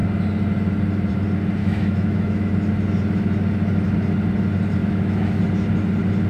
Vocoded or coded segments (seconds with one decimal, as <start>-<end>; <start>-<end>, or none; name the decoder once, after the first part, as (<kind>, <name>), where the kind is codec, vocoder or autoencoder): 1.6-2.5 (autoencoder, DAC-VAE); 4.8-5.4